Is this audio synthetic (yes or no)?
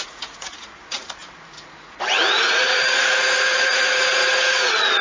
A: yes